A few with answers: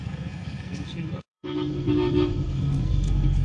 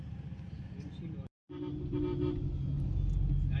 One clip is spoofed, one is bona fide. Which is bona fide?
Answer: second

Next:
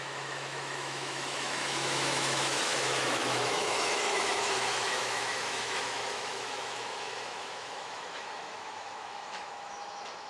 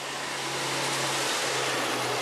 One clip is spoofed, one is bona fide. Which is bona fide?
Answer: second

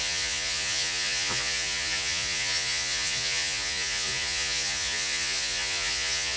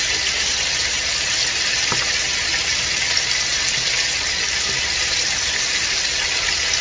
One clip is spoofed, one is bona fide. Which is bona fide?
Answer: second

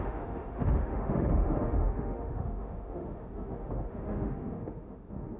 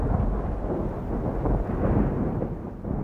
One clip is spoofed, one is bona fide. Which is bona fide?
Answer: second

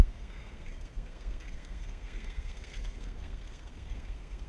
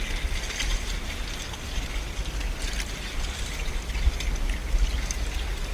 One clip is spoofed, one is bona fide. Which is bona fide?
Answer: second